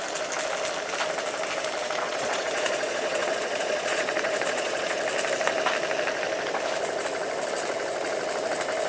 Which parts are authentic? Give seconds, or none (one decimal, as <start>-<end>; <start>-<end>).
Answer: 0.0-1.8; 5.0-8.9